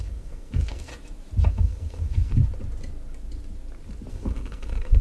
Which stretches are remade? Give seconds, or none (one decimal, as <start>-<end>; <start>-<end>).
0.0-0.9; 1.5-2.4; 4.1-5.0